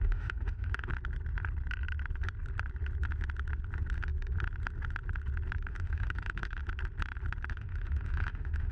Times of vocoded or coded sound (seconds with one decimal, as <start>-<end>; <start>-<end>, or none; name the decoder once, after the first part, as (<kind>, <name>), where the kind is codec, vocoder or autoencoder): 0.0-0.9 (autoencoder, DAC-VAE); 5.7-6.6; 7.5-8.7